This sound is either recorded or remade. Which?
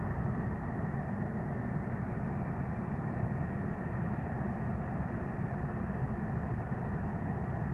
recorded